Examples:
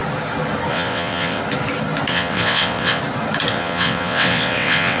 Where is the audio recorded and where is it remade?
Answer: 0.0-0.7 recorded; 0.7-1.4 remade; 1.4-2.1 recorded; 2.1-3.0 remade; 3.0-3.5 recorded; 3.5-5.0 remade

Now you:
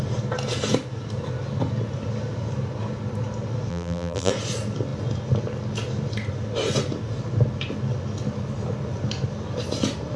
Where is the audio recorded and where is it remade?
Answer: 0.0-3.7 recorded; 3.7-4.3 remade; 4.3-10.2 recorded

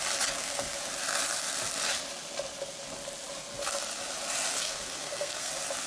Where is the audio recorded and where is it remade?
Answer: 0.0-4.5 recorded; 4.5-5.5 remade; 5.5-5.9 recorded

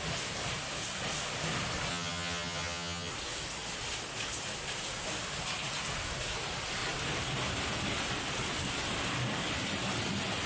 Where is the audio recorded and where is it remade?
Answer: 0.0-1.9 recorded; 1.9-3.1 remade; 3.1-10.5 recorded

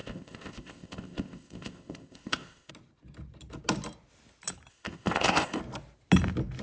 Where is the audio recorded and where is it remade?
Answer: 0.0-2.7 remade; 2.7-4.7 recorded; 4.7-5.6 remade; 5.6-6.6 recorded

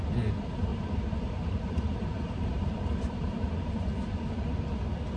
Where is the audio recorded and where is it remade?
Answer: 0.0-0.7 recorded; 0.7-3.8 remade; 3.8-5.2 recorded

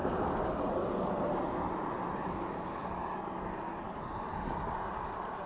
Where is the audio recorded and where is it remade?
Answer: 0.0-5.5 recorded